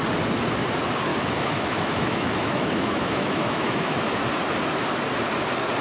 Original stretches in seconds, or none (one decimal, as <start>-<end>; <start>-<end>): 0.0-1.1; 4.2-5.8

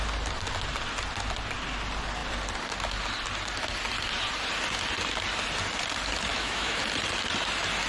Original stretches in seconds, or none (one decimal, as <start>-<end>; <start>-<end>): 0.0-6.3; 6.8-7.9

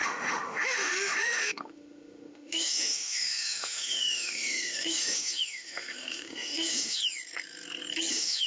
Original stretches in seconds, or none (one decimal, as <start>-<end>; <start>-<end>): 7.0-8.1

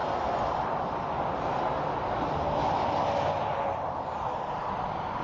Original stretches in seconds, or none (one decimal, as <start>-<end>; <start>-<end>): 0.0-5.2

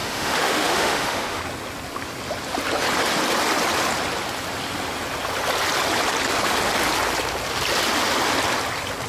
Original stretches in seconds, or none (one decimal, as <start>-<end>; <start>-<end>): 1.4-9.1

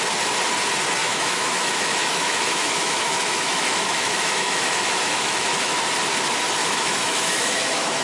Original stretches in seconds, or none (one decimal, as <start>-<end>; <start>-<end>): 0.0-1.0; 5.8-6.6

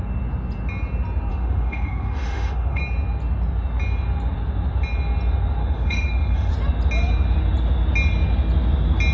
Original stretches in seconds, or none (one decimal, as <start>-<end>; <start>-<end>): 0.0-1.3; 2.8-5.6; 6.5-9.1

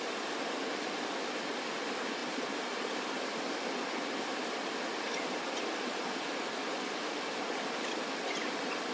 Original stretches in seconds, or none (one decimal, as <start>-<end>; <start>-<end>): 0.0-8.9